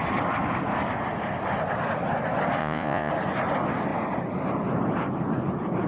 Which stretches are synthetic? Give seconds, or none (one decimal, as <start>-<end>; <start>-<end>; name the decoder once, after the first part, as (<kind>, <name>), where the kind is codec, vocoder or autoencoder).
2.6-3.1 (vocoder, Vocos)